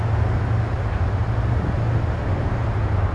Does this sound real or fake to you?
real